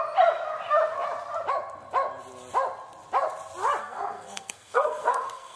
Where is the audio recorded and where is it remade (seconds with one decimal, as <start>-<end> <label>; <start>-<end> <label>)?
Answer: 0.0-3.8 recorded; 3.8-5.6 remade